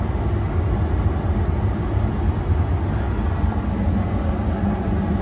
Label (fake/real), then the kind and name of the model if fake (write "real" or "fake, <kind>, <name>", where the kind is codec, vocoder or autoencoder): real